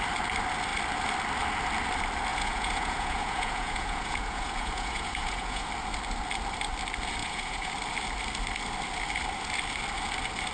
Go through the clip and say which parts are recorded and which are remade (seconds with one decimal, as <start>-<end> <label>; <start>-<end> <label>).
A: 0.0-2.3 recorded; 2.3-5.7 remade; 5.7-7.2 recorded; 7.2-7.7 remade; 7.7-10.5 recorded